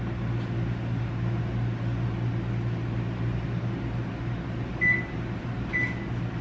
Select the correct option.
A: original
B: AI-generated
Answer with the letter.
A